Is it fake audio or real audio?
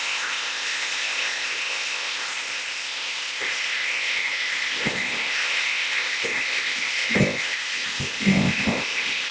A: fake